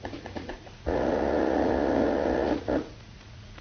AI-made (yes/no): yes